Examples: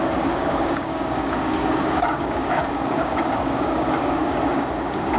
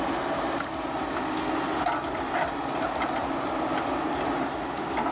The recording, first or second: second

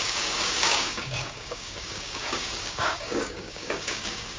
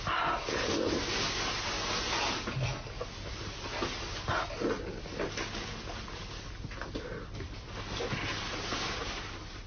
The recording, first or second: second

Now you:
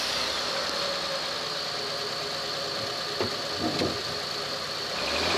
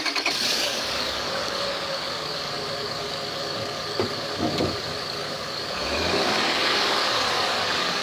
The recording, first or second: first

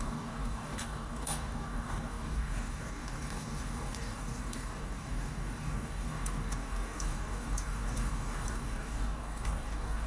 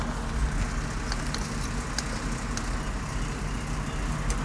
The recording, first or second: second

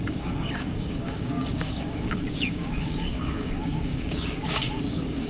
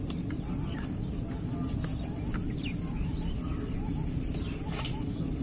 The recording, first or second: second